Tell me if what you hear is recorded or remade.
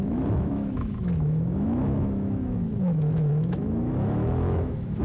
remade